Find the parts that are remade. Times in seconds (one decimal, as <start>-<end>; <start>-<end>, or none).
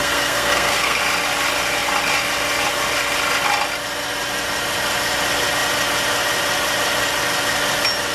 0.0-1.0